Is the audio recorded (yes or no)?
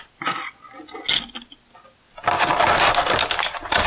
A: yes